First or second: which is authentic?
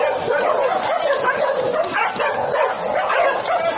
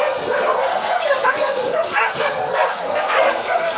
first